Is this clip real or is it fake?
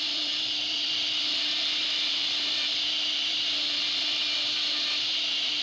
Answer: fake